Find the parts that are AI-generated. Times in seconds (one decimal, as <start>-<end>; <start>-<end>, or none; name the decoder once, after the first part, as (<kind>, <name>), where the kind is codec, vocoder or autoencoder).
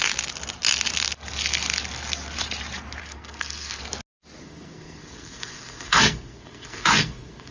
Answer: 3.0-3.8 (codec, SNAC); 4.4-7.5